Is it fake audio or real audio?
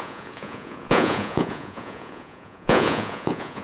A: fake